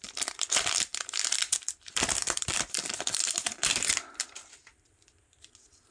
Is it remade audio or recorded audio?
remade